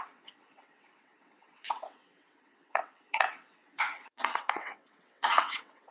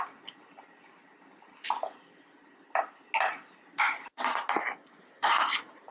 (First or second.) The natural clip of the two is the second